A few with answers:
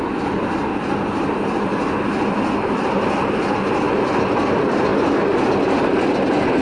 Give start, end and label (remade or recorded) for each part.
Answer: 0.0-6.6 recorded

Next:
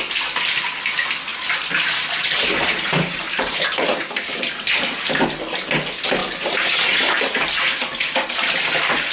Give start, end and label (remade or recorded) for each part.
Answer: 0.0-1.3 recorded; 1.3-3.7 remade; 3.7-6.2 recorded; 6.2-7.2 remade; 7.2-9.1 recorded

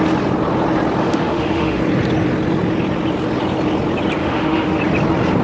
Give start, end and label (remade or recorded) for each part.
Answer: 0.0-1.0 recorded; 1.0-1.8 remade; 1.8-4.2 recorded; 4.2-4.8 remade; 4.8-5.4 recorded

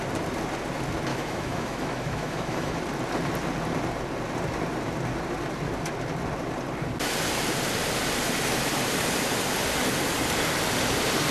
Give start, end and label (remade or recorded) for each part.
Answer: 0.0-1.1 recorded; 1.1-2.8 remade; 2.8-11.3 recorded

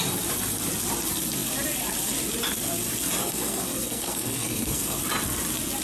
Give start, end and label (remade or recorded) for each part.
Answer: 0.0-3.2 recorded; 3.2-5.0 remade; 5.0-5.8 recorded

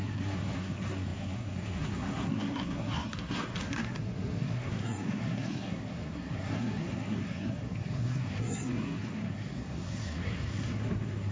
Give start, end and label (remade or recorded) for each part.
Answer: 0.0-11.3 remade